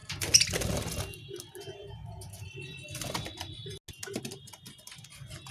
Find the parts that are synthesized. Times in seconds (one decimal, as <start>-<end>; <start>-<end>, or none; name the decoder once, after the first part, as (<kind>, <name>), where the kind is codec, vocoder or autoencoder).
none